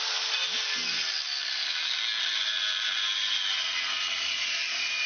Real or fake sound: real